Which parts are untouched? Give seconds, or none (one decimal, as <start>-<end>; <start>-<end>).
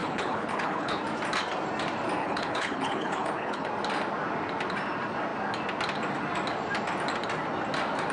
1.0-2.2; 3.7-8.1